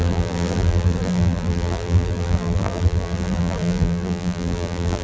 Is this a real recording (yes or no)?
no